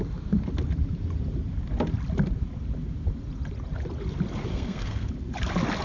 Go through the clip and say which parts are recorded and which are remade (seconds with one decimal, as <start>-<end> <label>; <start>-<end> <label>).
0.0-4.5 recorded; 4.5-5.1 remade; 5.1-5.8 recorded